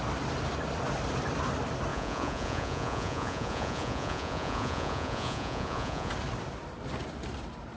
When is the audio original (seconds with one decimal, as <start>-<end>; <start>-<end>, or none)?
0.0-1.9; 6.1-7.8